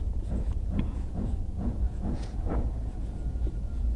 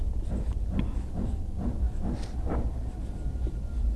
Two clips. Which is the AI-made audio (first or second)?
first